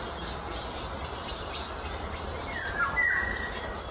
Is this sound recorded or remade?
recorded